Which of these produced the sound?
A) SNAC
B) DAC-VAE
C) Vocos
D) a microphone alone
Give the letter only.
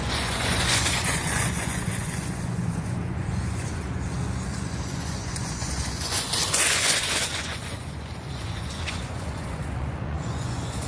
C